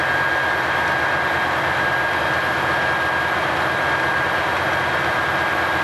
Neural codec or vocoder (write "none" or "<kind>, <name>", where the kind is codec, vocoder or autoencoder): none